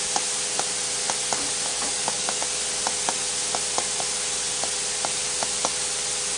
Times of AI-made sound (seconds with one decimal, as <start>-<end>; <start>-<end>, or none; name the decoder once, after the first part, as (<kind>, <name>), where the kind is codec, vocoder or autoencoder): 1.7-2.4 (codec, DAC)